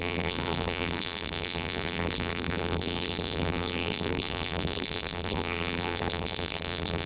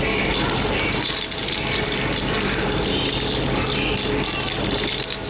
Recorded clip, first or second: second